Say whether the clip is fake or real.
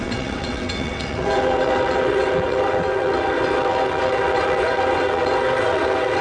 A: fake